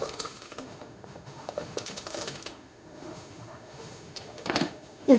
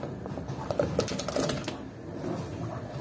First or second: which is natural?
second